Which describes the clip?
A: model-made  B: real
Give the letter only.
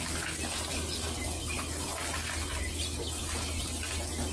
B